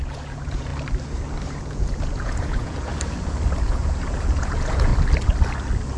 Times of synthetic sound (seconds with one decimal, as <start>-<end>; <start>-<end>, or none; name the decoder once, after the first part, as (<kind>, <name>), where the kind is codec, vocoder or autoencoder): 0.0-0.7 (vocoder, Vocos); 1.6-2.9; 3.6-4.9